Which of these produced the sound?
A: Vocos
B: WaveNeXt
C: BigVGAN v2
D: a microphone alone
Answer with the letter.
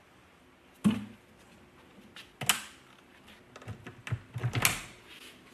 D